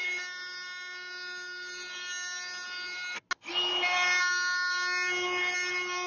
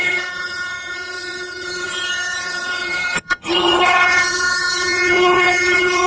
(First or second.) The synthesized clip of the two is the second